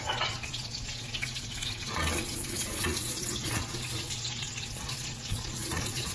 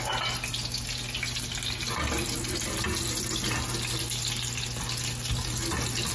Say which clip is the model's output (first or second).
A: first